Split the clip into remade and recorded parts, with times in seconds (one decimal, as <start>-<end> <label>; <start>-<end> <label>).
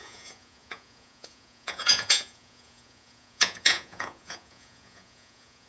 0.0-5.7 remade